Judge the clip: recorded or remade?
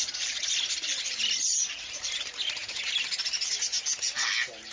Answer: recorded